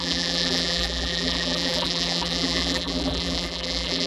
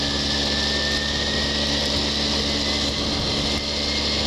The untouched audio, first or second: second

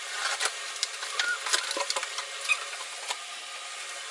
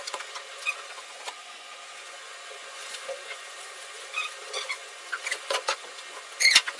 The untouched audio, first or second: first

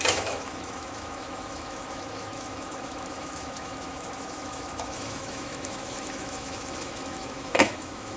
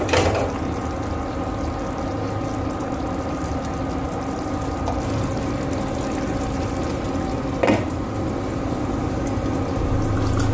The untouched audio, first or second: second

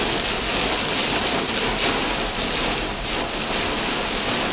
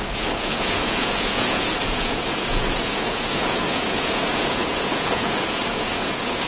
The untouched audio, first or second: first